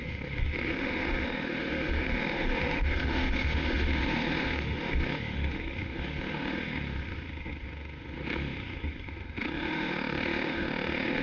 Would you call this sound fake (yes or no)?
yes